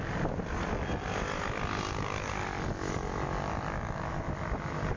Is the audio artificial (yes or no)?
no